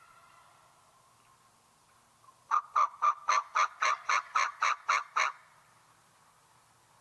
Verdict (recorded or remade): recorded